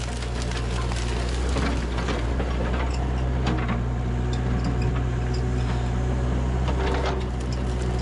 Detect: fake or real real